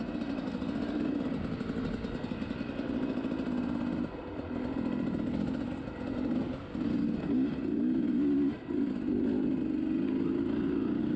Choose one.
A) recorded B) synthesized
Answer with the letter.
A